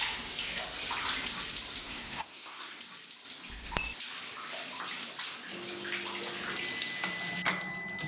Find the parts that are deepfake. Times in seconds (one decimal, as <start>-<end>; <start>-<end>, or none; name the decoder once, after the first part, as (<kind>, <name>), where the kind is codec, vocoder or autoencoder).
1.8-2.8 (codec, SNAC)